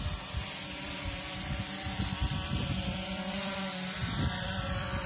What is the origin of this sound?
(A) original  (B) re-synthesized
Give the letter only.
B